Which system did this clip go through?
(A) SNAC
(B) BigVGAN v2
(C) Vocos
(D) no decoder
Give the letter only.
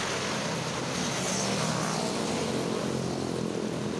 D